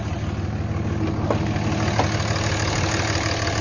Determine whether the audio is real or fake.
real